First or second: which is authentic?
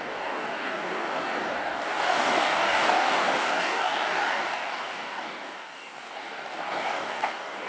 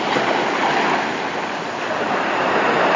second